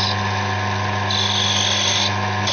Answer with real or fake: real